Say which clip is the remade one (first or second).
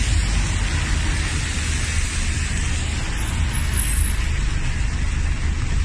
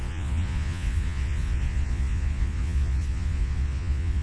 second